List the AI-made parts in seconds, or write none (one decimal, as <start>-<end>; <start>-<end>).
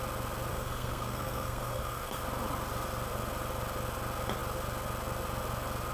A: 0.5-2.2